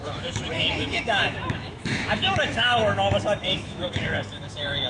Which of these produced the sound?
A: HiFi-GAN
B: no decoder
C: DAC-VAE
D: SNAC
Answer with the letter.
C